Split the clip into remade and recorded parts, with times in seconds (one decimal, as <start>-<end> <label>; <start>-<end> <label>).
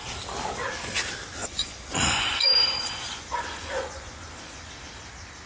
0.0-1.4 recorded; 1.4-4.7 remade; 4.7-5.5 recorded